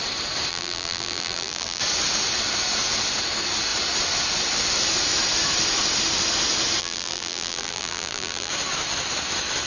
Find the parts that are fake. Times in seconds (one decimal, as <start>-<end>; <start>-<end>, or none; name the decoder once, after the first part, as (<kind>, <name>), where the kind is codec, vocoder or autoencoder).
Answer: 0.5-1.8 (vocoder, BigVGAN v2); 6.8-8.5